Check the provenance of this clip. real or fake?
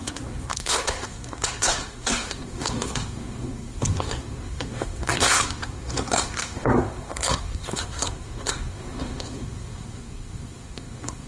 fake